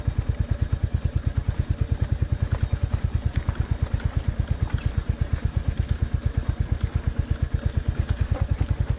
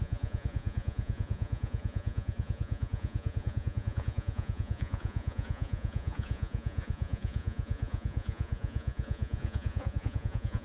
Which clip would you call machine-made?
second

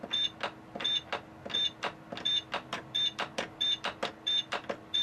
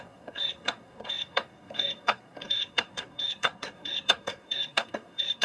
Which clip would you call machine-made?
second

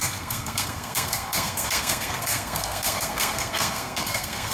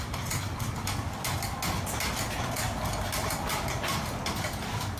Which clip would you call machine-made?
first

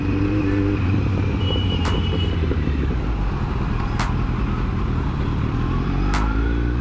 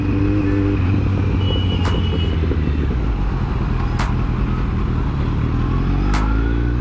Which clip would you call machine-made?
first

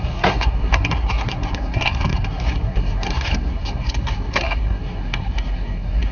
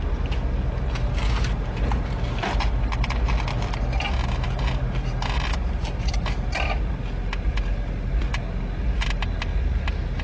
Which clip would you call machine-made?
first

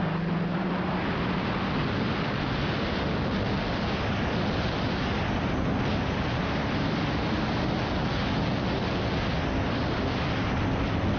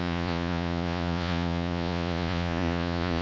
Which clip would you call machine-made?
second